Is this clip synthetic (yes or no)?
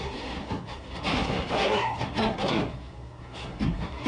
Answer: yes